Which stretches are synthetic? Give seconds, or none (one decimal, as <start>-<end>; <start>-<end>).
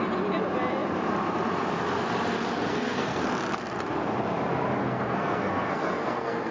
2.7-3.3; 4.8-6.5